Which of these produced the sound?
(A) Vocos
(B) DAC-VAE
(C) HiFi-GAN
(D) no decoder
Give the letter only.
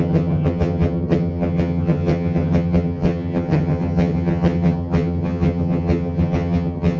C